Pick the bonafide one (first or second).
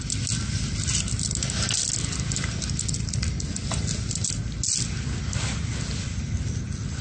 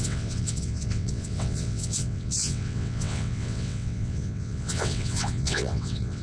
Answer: first